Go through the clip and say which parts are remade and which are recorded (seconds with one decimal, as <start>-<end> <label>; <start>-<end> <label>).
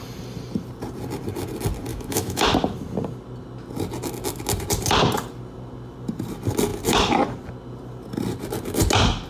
0.0-1.9 recorded; 1.9-2.5 remade; 2.5-9.3 recorded